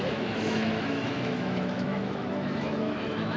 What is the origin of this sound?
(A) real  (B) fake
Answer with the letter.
B